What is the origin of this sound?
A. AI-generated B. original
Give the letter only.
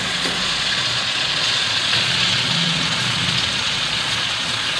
A